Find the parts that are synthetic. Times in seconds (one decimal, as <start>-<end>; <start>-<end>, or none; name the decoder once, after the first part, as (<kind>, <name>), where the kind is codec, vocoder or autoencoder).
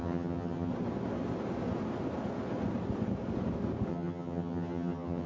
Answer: 0.0-0.7 (vocoder, HiFi-GAN); 3.9-5.3